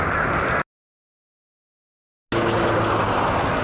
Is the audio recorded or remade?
recorded